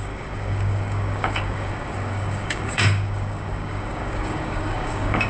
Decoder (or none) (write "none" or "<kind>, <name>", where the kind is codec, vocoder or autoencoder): codec, DAC